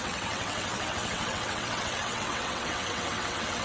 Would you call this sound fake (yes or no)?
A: yes